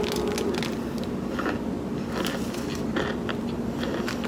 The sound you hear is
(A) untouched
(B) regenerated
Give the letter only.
A